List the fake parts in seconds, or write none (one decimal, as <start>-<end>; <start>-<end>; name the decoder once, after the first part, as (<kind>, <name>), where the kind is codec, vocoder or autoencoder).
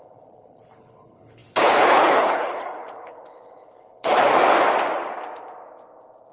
0.0-4.3 (codec, HILCodec)